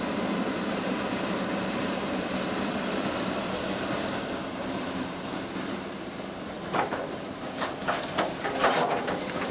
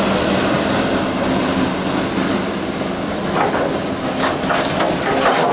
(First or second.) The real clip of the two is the second